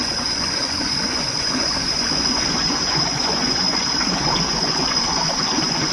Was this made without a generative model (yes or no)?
no